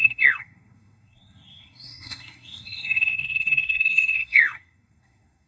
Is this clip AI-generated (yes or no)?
yes